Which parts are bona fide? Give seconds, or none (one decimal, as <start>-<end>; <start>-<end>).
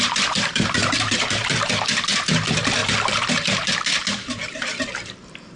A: none